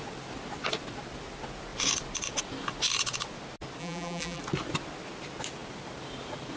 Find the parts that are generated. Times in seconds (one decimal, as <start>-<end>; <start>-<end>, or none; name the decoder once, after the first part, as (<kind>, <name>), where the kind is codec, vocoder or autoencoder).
3.8-4.4 (vocoder, BigVGAN v2)